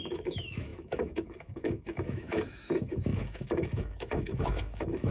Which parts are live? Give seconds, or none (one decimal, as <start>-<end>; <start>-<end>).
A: none